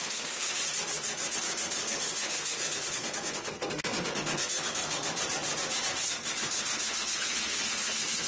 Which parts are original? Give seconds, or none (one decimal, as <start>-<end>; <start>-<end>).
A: 0.6-1.4; 5.1-6.1